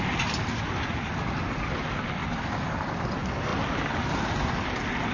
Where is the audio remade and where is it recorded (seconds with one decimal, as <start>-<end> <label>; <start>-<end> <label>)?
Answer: 0.0-2.2 recorded; 2.2-3.1 remade; 3.1-5.1 recorded